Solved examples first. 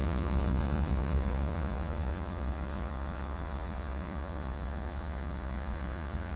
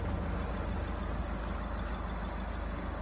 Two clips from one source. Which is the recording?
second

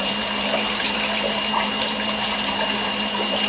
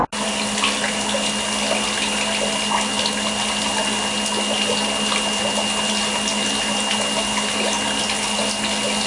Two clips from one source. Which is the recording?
second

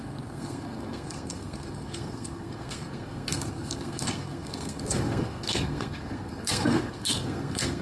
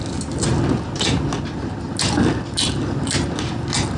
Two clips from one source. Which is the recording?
second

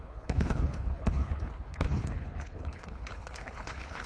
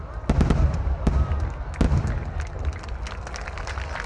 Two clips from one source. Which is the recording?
second